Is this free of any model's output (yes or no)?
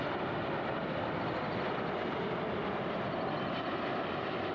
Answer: yes